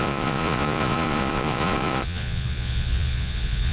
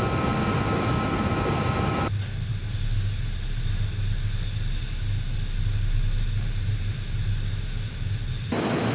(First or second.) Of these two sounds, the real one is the second